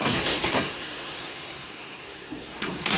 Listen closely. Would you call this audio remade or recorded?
remade